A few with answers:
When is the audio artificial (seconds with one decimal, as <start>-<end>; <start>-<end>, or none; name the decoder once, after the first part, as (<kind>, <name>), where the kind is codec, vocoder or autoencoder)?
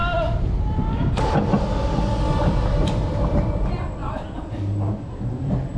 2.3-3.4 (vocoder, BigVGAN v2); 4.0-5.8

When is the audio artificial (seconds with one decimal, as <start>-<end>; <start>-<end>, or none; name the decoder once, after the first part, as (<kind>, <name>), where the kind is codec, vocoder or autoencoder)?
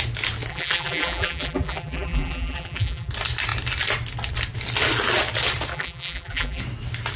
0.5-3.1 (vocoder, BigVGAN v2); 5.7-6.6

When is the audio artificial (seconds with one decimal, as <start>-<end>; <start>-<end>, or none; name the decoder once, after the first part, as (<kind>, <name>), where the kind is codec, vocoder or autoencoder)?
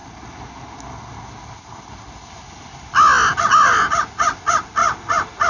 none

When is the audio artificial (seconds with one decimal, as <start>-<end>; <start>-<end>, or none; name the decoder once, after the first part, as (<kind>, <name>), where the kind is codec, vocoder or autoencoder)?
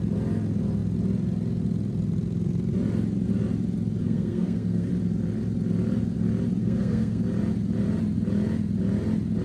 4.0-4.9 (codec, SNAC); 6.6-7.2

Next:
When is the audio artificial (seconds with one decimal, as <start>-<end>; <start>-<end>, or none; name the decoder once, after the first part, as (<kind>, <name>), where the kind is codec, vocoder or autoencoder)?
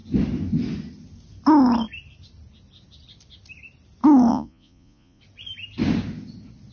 4.3-5.2 (vocoder, Vocos)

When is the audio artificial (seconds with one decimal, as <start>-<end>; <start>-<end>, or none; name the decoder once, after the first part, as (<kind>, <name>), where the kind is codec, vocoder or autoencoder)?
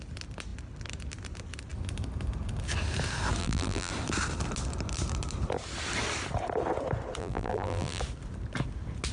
3.4-3.9 (vocoder, BigVGAN v2); 7.2-8.0